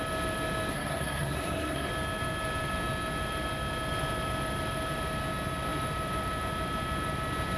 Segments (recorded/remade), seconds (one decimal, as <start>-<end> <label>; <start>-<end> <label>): 0.0-0.7 recorded; 0.7-1.9 remade; 1.9-7.6 recorded